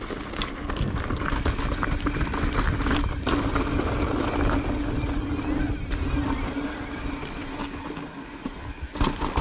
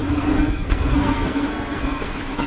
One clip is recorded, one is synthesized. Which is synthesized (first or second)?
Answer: second